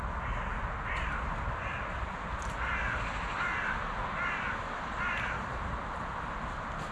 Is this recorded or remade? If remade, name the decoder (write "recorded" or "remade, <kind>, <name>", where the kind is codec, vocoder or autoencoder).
recorded